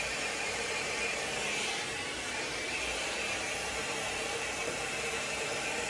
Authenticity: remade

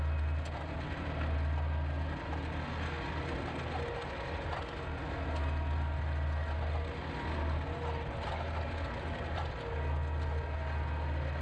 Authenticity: recorded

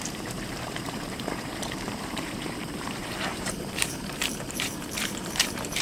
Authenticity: remade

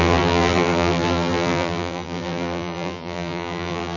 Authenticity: remade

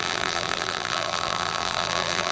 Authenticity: remade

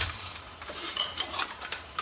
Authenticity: remade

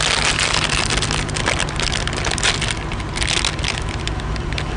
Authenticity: recorded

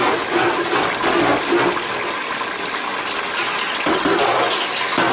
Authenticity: recorded